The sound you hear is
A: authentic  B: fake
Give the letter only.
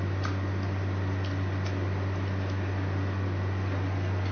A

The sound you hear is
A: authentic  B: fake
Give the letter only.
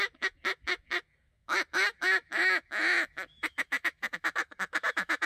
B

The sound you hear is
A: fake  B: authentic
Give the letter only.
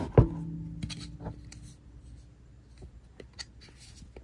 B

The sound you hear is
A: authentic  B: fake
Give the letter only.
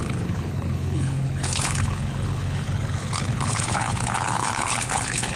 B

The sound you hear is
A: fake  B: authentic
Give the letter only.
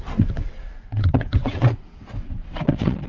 A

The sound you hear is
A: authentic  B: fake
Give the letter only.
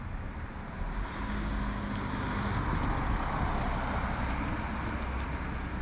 A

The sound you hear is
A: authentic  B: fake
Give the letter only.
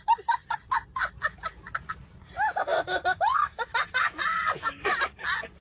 A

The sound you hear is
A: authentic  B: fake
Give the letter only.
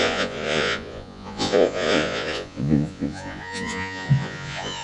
B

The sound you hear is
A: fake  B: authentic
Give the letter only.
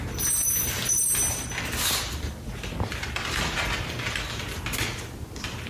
B